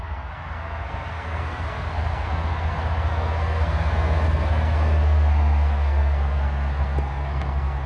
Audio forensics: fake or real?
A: fake